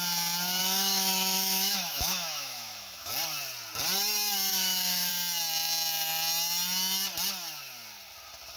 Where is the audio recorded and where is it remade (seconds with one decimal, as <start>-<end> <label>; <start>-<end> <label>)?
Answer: 0.0-0.6 recorded; 0.6-3.1 remade; 3.1-4.5 recorded; 4.5-5.1 remade; 5.1-8.6 recorded